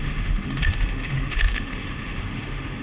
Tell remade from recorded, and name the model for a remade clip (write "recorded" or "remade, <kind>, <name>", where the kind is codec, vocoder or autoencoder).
remade, autoencoder, DAC-VAE